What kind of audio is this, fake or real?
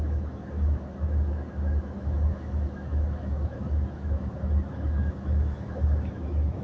fake